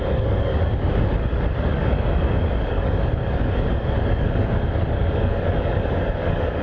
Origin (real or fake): fake